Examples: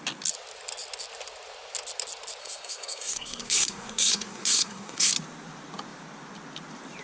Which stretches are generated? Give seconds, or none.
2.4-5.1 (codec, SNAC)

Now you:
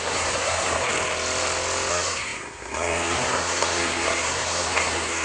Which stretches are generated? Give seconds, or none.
0.0-0.9 (codec, SNAC); 1.9-5.2

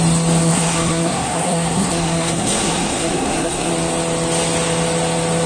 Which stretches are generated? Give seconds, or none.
0.4-3.7 (codec, SNAC)

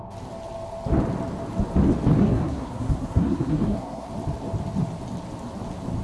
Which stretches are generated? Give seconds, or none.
2.2-4.1 (codec, SNAC)